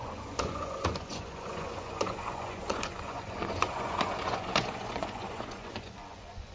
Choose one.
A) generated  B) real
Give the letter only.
A